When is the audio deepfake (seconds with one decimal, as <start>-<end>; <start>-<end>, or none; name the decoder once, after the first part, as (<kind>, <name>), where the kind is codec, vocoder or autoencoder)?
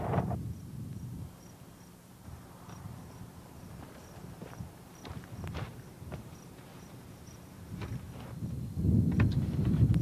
0.0-7.9 (vocoder, BigVGAN v2)